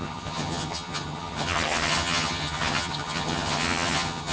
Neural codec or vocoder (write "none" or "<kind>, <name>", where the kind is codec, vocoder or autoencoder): vocoder, HiFi-GAN